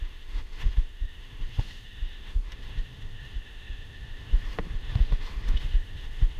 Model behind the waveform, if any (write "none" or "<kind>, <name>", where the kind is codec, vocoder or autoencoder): autoencoder, DAC-VAE